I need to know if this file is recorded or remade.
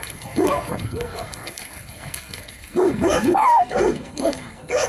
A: remade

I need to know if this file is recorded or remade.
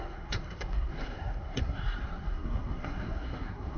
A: remade